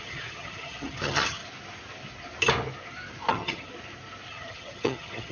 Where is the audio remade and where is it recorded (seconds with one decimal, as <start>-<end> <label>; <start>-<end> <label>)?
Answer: 0.0-1.4 remade; 1.4-3.3 recorded; 3.3-3.7 remade; 3.7-4.3 recorded; 4.3-5.3 remade